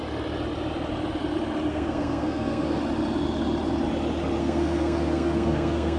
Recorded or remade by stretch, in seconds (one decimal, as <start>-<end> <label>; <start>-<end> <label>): 0.0-1.7 recorded; 1.7-2.8 remade; 2.8-4.4 recorded; 4.4-6.0 remade